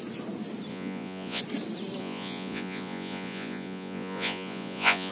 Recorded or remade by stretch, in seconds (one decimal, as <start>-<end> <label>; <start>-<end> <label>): 0.0-0.7 recorded; 0.7-1.4 remade; 1.4-2.0 recorded; 2.0-5.1 remade

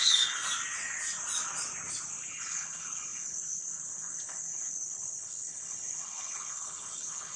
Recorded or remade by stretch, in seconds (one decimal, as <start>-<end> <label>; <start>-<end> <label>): 0.0-0.4 remade; 0.4-2.3 recorded; 2.3-7.4 remade

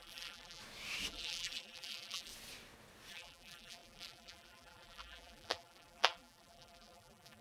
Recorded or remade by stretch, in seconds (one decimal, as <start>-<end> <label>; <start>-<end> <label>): 0.0-0.6 remade; 0.6-1.1 recorded; 1.1-2.3 remade; 2.3-3.1 recorded; 3.1-7.4 remade

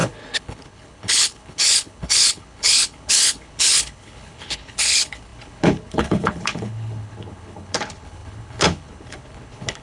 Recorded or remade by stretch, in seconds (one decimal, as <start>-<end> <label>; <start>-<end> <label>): 0.0-9.8 remade